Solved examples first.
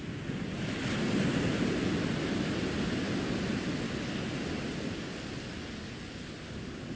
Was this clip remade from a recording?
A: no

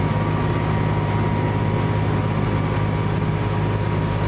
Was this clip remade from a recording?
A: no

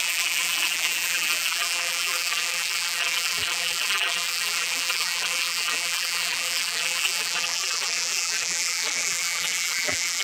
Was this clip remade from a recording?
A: yes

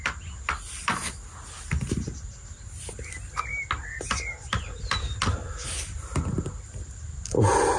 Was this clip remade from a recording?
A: no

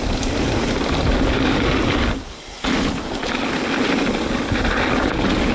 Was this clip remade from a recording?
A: no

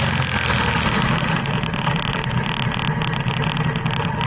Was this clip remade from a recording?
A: no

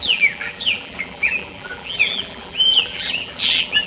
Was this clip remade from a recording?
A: yes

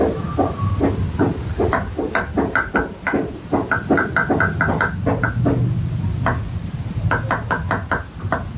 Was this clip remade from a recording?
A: no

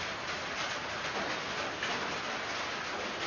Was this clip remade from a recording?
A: no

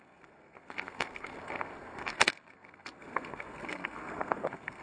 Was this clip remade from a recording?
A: yes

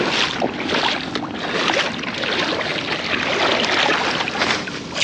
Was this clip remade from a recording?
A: no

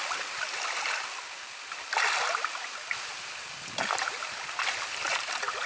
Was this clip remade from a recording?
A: no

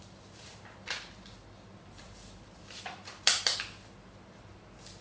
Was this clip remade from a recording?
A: no